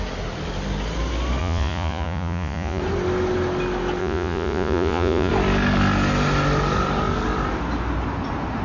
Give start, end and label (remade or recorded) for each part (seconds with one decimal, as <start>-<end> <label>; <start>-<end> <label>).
0.0-1.4 recorded; 1.4-2.8 remade; 2.8-4.0 recorded; 4.0-5.3 remade; 5.3-8.6 recorded